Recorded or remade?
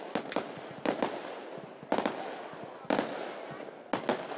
recorded